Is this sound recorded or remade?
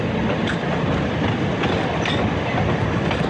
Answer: recorded